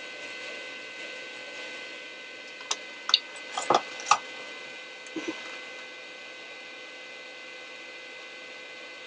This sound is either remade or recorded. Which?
recorded